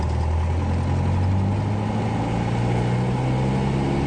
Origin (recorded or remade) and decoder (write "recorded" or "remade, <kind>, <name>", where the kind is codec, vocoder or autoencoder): recorded